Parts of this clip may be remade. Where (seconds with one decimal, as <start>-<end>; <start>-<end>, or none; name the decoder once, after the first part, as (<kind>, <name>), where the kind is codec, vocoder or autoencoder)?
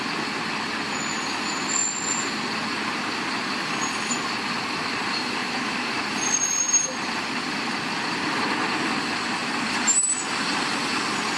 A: 1.8-3.5 (vocoder, BigVGAN v2); 5.4-8.5; 9.4-10.1